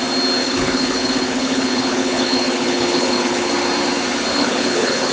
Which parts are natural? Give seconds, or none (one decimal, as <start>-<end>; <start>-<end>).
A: 0.0-0.4; 3.5-4.3